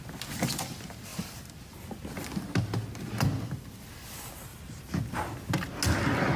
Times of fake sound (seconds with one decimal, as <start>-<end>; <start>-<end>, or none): none